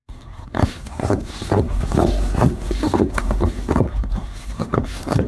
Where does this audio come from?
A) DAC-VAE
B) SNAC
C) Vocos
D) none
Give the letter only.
B